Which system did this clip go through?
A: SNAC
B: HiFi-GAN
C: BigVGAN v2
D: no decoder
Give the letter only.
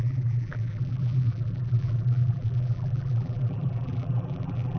C